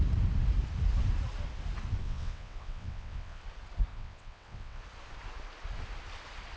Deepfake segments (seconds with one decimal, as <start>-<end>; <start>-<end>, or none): 2.0-3.4; 3.9-4.8